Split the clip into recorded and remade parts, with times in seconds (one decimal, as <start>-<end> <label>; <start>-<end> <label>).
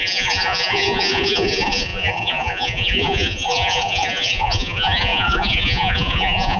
0.0-6.6 remade